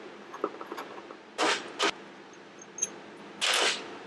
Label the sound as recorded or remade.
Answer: recorded